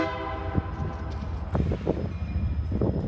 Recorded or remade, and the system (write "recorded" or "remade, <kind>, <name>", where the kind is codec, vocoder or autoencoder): recorded